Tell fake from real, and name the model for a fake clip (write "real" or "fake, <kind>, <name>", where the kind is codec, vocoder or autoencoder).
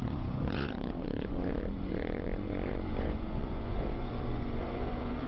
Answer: fake, vocoder, Vocos